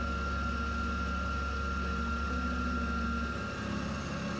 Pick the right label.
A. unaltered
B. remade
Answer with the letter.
A